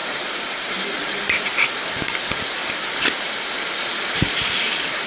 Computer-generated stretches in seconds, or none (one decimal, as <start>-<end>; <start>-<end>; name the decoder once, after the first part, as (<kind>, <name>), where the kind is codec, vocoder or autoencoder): 0.0-2.2 (vocoder, BigVGAN v2)